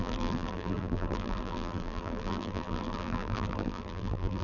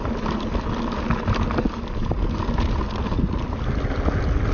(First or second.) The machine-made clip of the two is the first